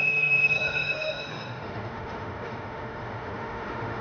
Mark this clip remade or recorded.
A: remade